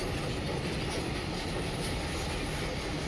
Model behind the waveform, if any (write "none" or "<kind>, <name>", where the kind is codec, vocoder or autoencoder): none